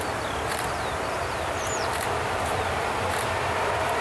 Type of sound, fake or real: fake